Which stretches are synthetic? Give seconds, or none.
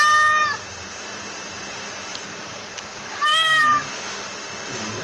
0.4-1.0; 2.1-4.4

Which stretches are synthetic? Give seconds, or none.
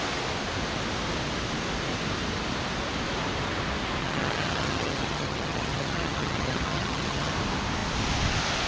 4.0-7.3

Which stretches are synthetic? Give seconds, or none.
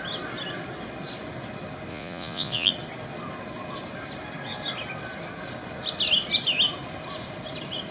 1.9-2.7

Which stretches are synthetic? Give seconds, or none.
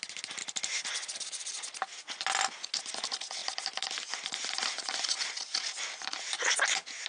none